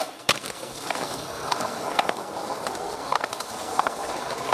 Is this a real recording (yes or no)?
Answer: no